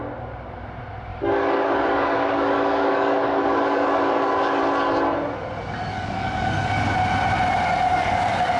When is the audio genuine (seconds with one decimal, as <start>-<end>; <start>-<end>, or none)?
0.0-1.1; 4.6-5.9; 6.7-7.9

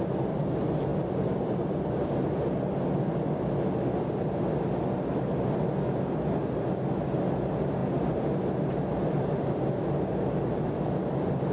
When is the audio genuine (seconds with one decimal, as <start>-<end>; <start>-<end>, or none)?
0.0-11.5

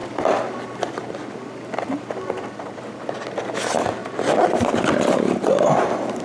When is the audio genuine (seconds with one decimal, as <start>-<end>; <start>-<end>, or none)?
2.6-6.2

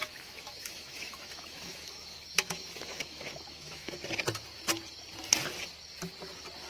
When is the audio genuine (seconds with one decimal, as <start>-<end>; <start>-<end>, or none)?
4.0-6.7

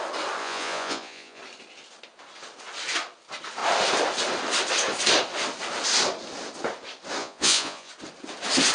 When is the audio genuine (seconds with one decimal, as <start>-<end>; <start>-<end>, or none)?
0.0-0.4; 1.4-7.2; 7.9-8.7

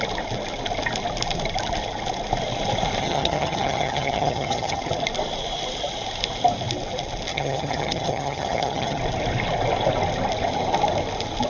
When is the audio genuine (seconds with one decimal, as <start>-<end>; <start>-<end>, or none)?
0.0-3.0; 4.8-7.3; 9.0-11.5